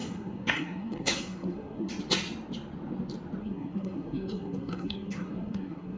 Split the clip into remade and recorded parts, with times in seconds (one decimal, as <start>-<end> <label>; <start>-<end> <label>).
0.0-1.9 remade; 1.9-3.4 recorded; 3.4-6.0 remade